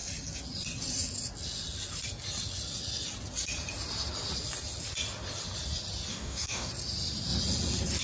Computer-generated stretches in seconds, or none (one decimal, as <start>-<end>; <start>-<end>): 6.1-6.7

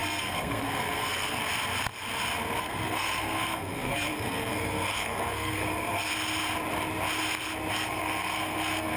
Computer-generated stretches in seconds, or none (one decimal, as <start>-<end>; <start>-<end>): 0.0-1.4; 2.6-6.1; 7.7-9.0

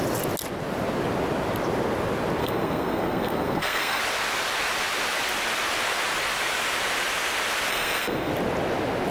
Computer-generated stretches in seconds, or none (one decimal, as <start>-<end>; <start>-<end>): 2.4-4.0; 7.7-8.3

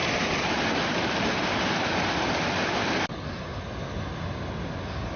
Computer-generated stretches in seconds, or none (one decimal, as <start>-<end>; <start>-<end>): none

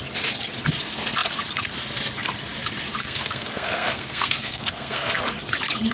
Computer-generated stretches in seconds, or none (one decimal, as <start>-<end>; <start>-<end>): 3.0-5.3